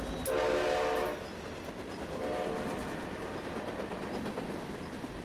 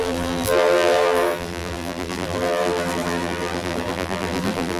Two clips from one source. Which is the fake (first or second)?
second